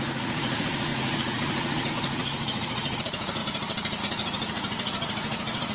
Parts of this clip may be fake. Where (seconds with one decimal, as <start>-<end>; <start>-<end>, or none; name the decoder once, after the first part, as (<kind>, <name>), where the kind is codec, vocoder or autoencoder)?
0.0-3.4 (vocoder, Vocos); 4.0-5.7